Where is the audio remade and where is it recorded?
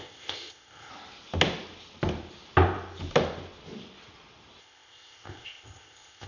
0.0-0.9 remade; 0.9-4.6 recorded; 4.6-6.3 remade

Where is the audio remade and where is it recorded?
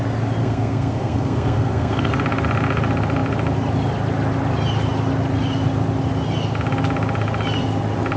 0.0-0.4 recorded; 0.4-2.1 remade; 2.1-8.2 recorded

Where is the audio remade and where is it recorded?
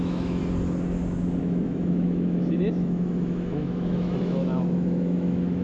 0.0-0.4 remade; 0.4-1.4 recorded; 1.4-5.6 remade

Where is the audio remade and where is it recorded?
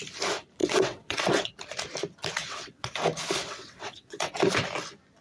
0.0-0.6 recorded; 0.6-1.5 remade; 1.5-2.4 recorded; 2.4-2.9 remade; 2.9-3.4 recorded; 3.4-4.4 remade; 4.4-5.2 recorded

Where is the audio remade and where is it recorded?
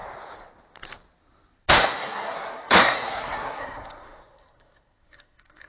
0.0-1.7 recorded; 1.7-5.7 remade